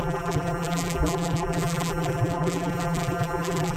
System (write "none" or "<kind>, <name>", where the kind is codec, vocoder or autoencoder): vocoder, BigVGAN v2